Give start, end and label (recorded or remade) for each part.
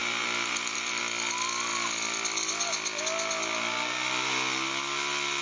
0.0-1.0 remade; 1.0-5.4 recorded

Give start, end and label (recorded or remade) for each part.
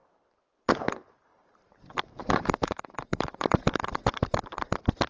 0.0-1.3 recorded; 1.3-4.4 remade; 4.4-5.1 recorded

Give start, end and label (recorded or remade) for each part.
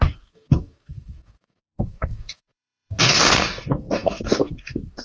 0.0-5.0 remade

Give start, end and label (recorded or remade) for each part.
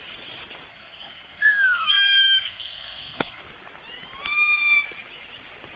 0.0-0.7 recorded; 0.7-3.4 remade; 3.4-5.8 recorded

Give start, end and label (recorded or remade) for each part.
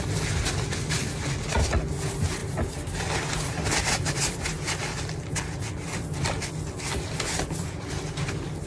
0.0-8.7 recorded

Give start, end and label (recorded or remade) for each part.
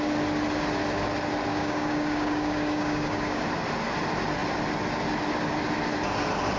0.0-1.5 recorded; 1.5-3.4 remade; 3.4-6.6 recorded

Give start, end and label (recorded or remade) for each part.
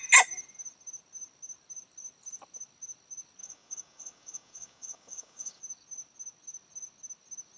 0.0-3.4 recorded; 3.4-5.6 remade; 5.6-7.6 recorded